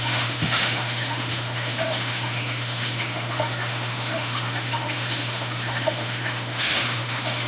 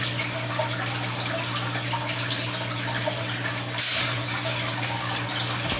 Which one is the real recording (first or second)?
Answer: second